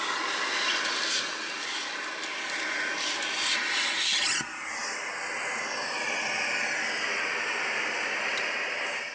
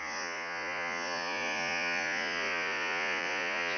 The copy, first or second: second